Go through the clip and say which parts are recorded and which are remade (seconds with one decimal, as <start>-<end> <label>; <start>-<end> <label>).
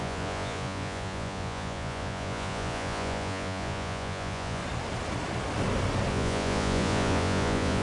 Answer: 0.0-4.6 remade; 4.6-6.1 recorded; 6.1-7.8 remade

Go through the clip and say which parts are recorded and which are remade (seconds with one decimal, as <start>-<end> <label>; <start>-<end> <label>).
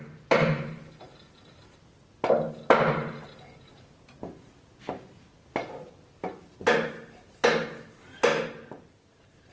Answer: 0.0-9.5 recorded